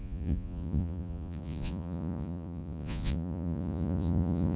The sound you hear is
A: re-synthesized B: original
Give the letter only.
A